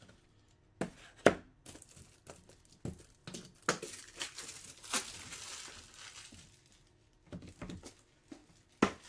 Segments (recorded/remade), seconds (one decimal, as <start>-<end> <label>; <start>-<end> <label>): 0.0-9.1 recorded